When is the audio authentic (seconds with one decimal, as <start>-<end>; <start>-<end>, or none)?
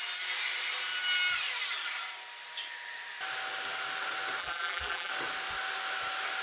0.0-4.4; 5.1-6.4